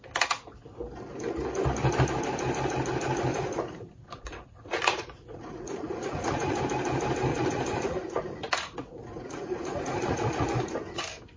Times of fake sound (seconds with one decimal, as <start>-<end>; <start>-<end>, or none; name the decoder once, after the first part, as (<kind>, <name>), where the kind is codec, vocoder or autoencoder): 3.3-6.6 (vocoder, Vocos); 7.3-11.0